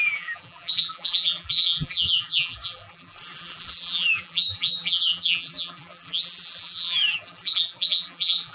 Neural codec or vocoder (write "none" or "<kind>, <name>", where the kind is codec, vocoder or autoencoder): vocoder, BigVGAN v2